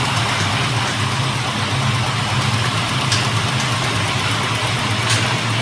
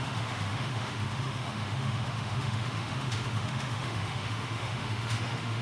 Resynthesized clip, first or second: second